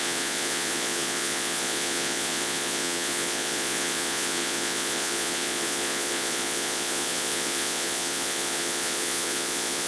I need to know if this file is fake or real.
fake